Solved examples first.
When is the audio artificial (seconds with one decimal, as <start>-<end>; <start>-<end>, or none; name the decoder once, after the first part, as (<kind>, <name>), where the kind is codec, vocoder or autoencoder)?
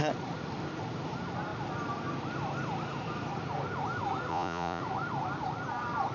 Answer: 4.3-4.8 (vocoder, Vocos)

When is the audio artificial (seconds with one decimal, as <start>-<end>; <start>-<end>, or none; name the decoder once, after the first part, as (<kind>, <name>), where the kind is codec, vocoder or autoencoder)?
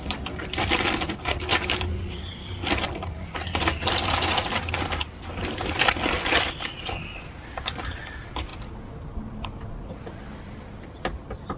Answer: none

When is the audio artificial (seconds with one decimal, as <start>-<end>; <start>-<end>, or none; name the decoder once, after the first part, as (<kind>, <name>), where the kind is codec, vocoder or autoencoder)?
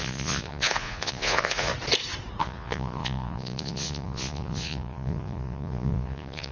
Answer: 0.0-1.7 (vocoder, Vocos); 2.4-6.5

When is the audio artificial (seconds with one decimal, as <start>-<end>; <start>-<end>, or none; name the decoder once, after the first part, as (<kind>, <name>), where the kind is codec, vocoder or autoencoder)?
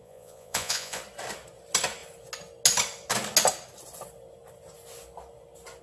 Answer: 0.0-1.0 (vocoder, Vocos)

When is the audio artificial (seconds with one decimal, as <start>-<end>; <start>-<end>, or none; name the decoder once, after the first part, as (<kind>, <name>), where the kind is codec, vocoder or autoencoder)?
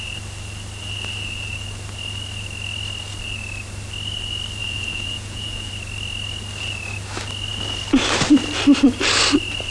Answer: 4.6-5.7 (vocoder, Vocos)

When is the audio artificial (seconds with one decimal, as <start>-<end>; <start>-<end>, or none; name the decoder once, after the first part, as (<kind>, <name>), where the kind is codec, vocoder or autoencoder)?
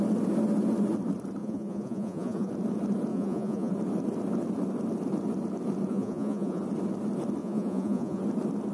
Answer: 1.4-2.5 (vocoder, Vocos); 3.1-3.7; 5.9-6.6; 7.4-8.2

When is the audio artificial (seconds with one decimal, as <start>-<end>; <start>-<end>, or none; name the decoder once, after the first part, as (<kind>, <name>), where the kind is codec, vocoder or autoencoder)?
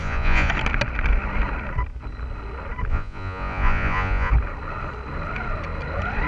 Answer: 0.0-0.5 (vocoder, Vocos); 2.9-4.3